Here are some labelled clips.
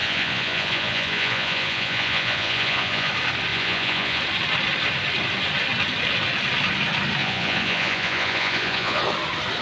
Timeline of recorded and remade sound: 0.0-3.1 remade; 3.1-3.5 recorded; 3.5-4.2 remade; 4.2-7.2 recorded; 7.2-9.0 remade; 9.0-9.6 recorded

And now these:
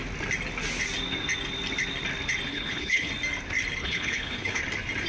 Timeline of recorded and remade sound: 0.0-2.5 recorded; 2.5-3.1 remade; 3.1-3.8 recorded; 3.8-4.6 remade; 4.6-5.1 recorded

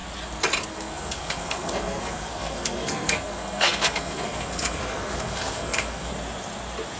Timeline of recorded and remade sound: 0.0-0.7 recorded; 0.7-6.1 remade; 6.1-7.0 recorded